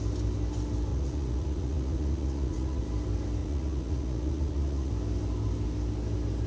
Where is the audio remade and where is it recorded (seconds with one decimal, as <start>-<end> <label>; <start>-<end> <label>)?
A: 0.0-0.9 recorded; 0.9-2.8 remade; 2.8-3.4 recorded; 3.4-4.9 remade; 4.9-6.5 recorded